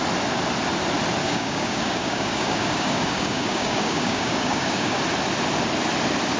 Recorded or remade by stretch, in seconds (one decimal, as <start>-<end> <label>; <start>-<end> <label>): 0.0-1.2 recorded; 1.2-5.0 remade; 5.0-6.4 recorded

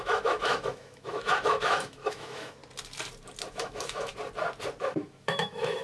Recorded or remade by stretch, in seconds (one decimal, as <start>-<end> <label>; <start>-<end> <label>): 0.0-2.6 remade; 2.6-3.5 recorded; 3.5-4.1 remade; 4.1-4.8 recorded; 4.8-5.8 remade

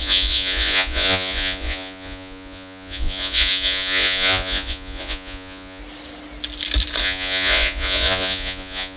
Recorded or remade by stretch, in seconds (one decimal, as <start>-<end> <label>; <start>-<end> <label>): 0.0-5.8 remade; 5.8-7.0 recorded; 7.0-9.0 remade

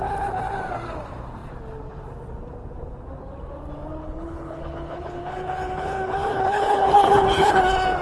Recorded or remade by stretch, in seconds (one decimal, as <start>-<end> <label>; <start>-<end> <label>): 0.0-4.0 recorded; 4.0-7.6 remade; 7.6-8.0 recorded

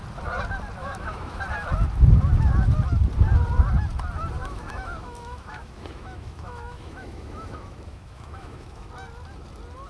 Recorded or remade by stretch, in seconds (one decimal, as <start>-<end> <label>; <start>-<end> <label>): 0.0-0.8 recorded; 0.8-1.4 remade; 1.4-4.4 recorded; 4.4-8.9 remade; 8.9-9.9 recorded

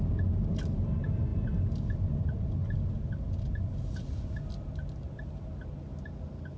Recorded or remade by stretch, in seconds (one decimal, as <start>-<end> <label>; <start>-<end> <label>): 0.0-6.6 recorded

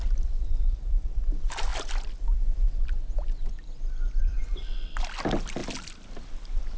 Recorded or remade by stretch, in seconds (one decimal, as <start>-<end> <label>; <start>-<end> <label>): 0.0-6.8 recorded